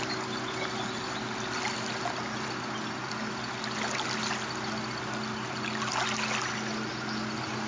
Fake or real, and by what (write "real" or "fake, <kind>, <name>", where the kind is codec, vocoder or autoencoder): real